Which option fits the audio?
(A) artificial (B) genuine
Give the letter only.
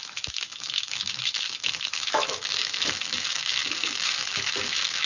A